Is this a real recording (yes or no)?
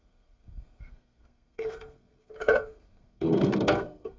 no